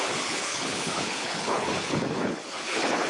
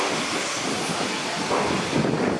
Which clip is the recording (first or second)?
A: second